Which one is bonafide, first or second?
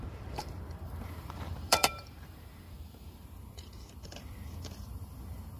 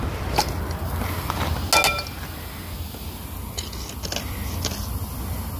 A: second